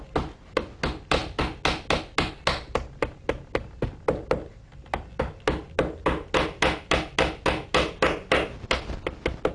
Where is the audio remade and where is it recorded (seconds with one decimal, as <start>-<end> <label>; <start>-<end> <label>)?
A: 0.0-9.5 recorded